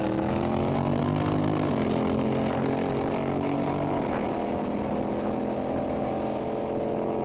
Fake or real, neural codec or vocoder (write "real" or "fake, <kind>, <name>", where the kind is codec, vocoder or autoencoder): real